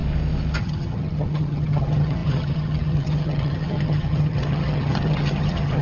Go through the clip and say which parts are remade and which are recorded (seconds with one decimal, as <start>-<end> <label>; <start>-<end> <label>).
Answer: 0.0-0.6 recorded; 0.6-5.8 remade